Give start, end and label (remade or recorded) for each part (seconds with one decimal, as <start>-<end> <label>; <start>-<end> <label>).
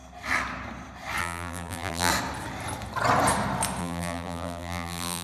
0.0-1.2 recorded; 1.2-2.1 remade; 2.1-3.8 recorded; 3.8-5.2 remade